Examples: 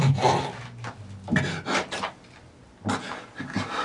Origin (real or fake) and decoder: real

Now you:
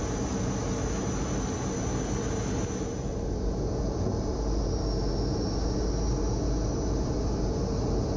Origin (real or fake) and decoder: real